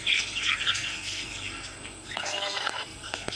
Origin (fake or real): fake